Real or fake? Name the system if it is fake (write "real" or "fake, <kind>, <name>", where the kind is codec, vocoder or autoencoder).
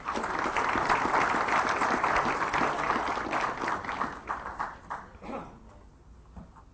real